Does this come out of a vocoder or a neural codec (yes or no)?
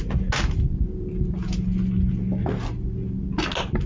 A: no